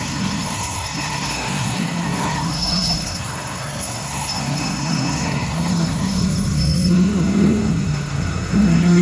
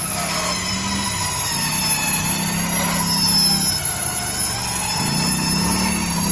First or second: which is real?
second